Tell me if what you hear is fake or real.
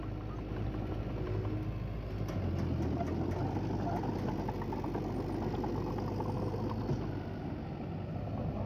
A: real